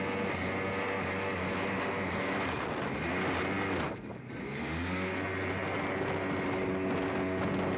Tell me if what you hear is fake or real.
real